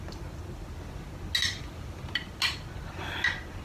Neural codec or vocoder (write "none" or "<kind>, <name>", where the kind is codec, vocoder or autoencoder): none